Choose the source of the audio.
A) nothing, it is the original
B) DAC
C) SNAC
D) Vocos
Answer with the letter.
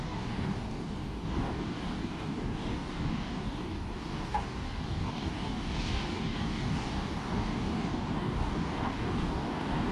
B